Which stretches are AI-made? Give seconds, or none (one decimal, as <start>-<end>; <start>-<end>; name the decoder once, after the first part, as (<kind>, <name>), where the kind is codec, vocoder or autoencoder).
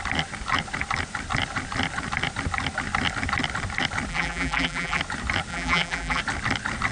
4.1-5.0 (vocoder, BigVGAN v2); 5.5-6.2